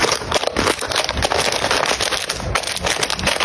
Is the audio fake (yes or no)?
no